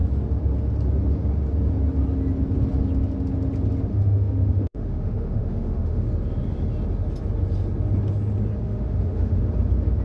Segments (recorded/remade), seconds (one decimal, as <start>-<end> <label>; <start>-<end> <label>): 0.0-3.9 recorded; 3.9-6.1 remade; 6.1-8.6 recorded; 8.6-9.4 remade; 9.4-10.0 recorded